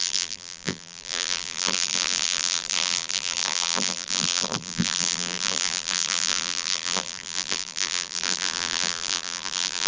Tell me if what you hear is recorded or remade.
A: remade